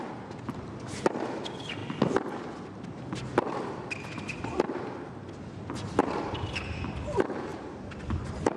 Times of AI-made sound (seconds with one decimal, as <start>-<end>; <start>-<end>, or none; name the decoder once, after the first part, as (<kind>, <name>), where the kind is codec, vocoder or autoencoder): none